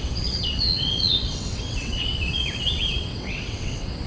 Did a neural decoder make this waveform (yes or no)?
yes